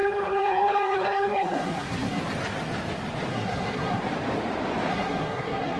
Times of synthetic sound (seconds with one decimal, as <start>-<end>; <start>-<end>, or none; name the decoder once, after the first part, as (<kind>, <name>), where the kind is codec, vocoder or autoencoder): 0.0-2.2 (codec, SNAC); 3.3-4.0; 4.9-5.8